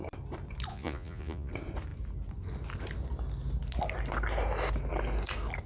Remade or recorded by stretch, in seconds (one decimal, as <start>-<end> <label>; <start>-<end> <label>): 0.0-0.7 recorded; 0.7-1.5 remade; 1.5-5.7 recorded